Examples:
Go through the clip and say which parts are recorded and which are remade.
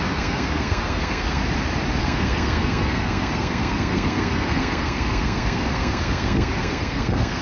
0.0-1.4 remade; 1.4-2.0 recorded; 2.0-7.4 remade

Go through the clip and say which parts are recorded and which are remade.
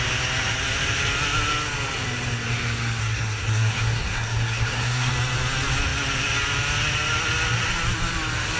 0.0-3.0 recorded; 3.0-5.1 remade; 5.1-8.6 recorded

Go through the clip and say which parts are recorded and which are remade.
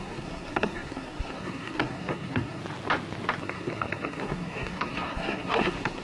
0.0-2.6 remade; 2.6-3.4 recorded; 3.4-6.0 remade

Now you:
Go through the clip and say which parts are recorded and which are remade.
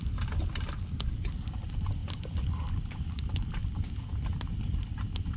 0.0-5.4 recorded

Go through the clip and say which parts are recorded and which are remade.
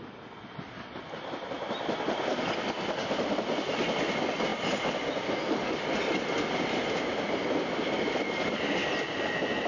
0.0-9.7 recorded